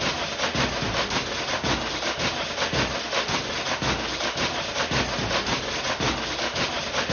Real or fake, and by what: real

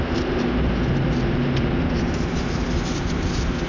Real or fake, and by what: real